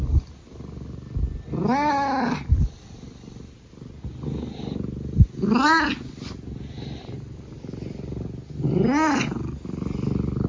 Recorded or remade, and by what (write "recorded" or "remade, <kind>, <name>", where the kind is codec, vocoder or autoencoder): recorded